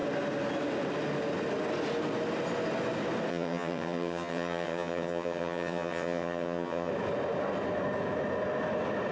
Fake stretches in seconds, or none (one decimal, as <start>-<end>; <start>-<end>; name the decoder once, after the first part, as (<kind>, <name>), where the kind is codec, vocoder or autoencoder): 3.3-6.9 (vocoder, HiFi-GAN)